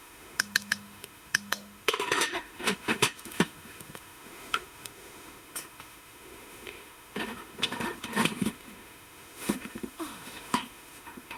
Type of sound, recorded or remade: remade